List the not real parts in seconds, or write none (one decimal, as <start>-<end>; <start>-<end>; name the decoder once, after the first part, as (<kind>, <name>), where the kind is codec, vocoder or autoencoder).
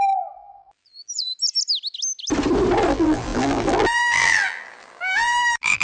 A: 0.0-1.3 (vocoder, BigVGAN v2); 2.9-5.8